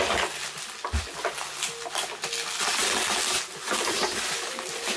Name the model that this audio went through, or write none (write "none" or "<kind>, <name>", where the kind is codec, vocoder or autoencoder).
none